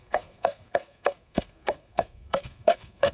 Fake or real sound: fake